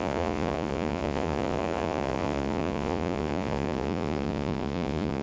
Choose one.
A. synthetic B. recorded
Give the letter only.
A